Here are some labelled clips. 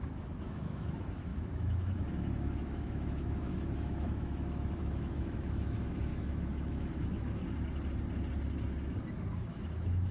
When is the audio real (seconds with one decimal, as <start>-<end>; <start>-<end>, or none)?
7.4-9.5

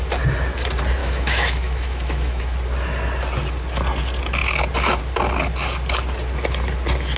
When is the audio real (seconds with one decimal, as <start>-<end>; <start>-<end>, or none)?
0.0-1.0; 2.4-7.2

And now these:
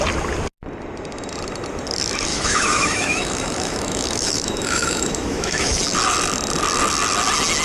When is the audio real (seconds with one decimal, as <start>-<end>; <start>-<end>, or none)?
0.0-2.3; 5.8-7.6